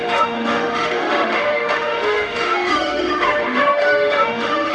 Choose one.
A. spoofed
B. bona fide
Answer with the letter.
A